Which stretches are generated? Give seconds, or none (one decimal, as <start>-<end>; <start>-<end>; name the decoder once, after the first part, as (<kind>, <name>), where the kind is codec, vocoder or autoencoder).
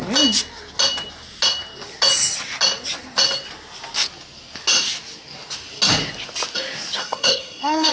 7.0-7.9 (codec, SNAC)